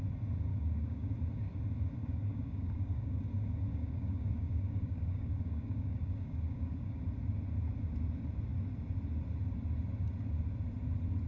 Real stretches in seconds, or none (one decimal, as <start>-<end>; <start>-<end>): 0.0-0.5; 1.1-2.0; 3.2-3.7; 7.0-11.3